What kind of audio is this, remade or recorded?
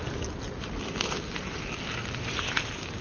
recorded